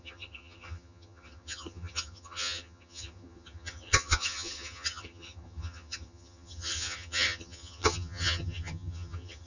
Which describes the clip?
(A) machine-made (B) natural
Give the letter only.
A